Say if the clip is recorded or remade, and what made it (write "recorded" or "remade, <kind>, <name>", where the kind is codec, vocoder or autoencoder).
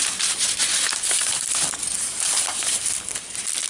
recorded